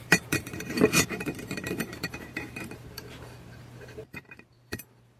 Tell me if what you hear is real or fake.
fake